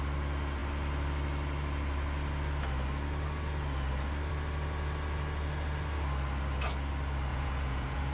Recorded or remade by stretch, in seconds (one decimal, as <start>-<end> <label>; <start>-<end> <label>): 0.0-7.3 recorded; 7.3-8.1 remade